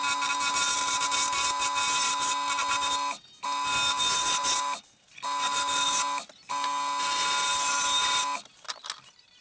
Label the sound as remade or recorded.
recorded